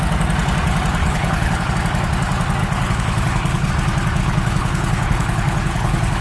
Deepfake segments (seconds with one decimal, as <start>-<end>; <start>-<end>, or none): 1.0-1.7; 2.6-3.7; 4.2-6.2